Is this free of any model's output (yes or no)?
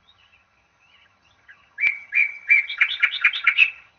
no